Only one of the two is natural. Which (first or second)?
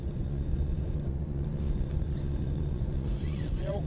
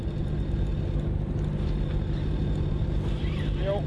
second